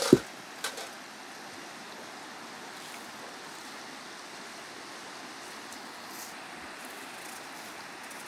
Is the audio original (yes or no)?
yes